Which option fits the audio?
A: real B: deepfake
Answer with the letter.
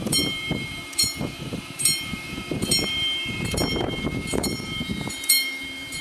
B